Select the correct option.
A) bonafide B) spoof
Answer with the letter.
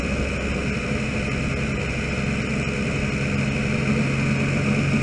A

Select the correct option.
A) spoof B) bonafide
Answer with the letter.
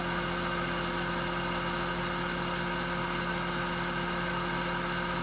B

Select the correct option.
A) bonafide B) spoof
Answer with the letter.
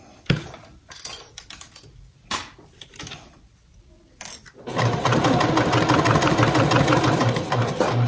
A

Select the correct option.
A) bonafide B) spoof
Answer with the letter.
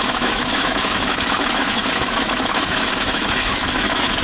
B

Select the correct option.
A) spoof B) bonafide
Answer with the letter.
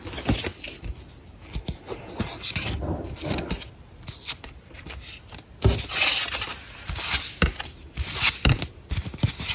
B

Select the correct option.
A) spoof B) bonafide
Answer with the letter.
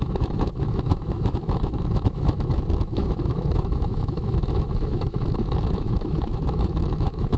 A